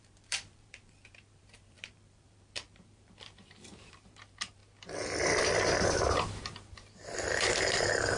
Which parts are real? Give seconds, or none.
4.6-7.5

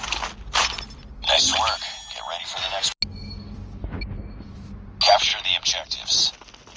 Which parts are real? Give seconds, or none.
0.0-6.8

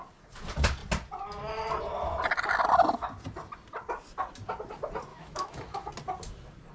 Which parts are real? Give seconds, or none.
0.0-5.1; 5.9-6.7